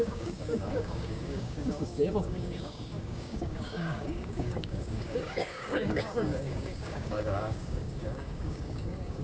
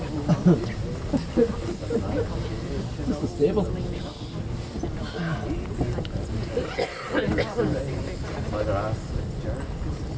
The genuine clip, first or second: second